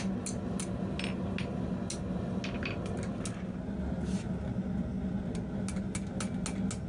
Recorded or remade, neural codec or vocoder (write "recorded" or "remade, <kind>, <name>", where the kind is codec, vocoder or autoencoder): recorded